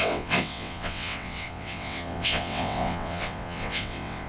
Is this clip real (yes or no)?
no